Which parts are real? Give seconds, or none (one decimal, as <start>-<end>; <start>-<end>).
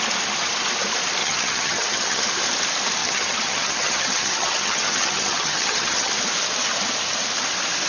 0.0-1.2; 2.2-3.0; 6.1-7.9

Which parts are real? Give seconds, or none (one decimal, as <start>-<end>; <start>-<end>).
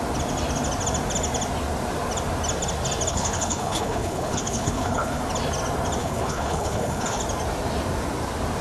0.0-3.1; 5.2-6.0; 7.2-8.6